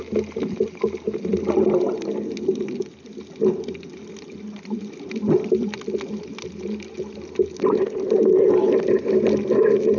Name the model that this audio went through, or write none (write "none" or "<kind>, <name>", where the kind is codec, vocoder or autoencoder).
none